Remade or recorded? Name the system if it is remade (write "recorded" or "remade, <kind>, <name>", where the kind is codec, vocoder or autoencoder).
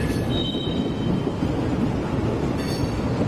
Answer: recorded